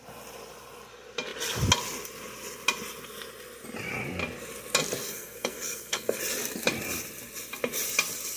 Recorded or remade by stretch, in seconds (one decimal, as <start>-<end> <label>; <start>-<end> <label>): 0.0-5.0 recorded; 5.0-6.2 remade; 6.2-8.4 recorded